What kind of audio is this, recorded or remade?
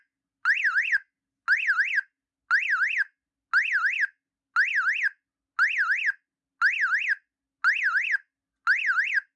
recorded